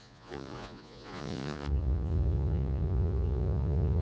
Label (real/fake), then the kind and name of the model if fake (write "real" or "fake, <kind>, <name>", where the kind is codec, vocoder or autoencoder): fake, vocoder, Vocos